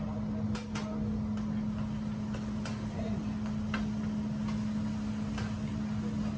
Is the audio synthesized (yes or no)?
no